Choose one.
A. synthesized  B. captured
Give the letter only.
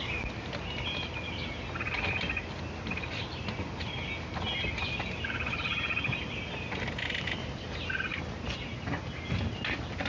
B